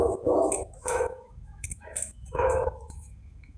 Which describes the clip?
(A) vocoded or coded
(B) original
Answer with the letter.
A